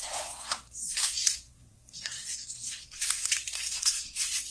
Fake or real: fake